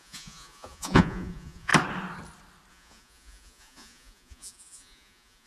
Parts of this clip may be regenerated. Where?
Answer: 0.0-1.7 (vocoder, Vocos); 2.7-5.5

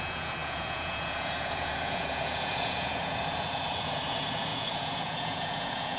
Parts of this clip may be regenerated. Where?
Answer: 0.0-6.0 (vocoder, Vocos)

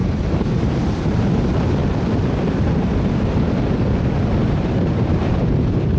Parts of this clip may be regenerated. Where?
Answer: 0.0-1.8 (vocoder, BigVGAN v2); 4.5-5.2

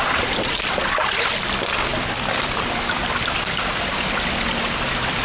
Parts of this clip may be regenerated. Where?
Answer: 1.9-5.2 (vocoder, BigVGAN v2)

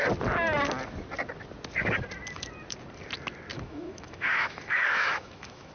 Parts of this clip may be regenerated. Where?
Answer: 3.5-5.7 (autoencoder, DAC-VAE)